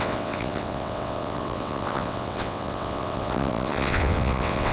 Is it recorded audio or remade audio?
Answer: remade